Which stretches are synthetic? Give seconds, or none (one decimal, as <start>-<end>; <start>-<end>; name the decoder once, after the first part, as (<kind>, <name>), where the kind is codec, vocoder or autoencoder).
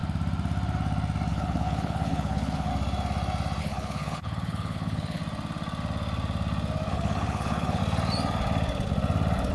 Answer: 1.3-2.7 (codec, HILCodec); 3.6-5.2; 6.9-7.8